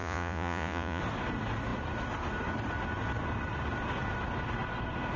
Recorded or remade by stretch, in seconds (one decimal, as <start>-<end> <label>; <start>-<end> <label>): 0.0-1.0 remade; 1.0-5.2 recorded